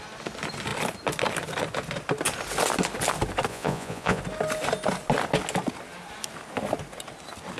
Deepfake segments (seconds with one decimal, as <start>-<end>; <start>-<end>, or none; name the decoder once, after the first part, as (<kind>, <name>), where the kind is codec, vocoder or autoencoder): 3.5-4.2 (vocoder, Vocos)